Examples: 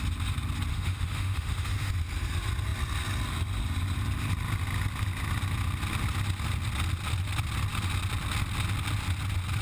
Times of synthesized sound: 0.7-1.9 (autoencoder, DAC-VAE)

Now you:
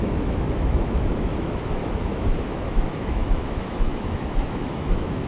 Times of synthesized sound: 0.0-5.3 (autoencoder, DAC-VAE)

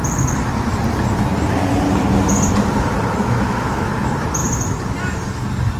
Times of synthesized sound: 3.2-3.9 (autoencoder, DAC-VAE)

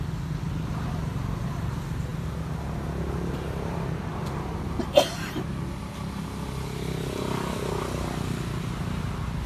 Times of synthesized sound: none